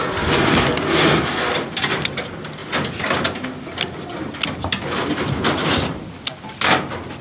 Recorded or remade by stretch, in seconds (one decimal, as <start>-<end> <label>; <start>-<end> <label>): 0.0-7.2 recorded